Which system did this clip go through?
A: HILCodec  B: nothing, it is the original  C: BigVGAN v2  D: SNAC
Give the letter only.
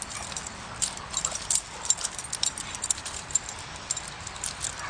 C